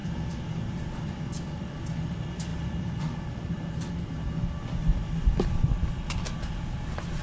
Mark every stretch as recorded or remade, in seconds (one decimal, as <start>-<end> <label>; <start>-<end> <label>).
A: 0.0-1.8 remade; 1.8-2.5 recorded; 2.5-4.1 remade; 4.1-7.2 recorded